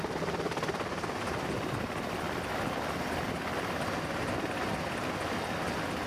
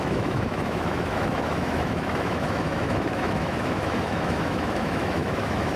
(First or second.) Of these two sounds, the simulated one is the second